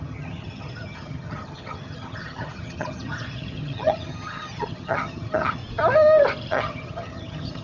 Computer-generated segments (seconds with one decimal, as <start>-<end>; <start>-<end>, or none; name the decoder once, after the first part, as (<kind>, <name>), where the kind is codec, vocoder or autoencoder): 0.0-5.6 (vocoder, HiFi-GAN); 6.5-7.6